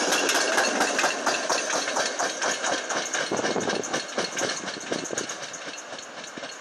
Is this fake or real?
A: real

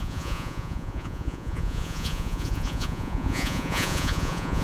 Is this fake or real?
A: fake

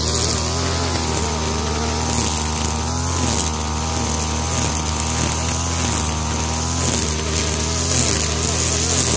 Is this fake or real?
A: real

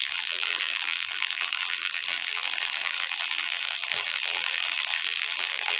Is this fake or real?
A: fake